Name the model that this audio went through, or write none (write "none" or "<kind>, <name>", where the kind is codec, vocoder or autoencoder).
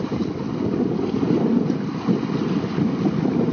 none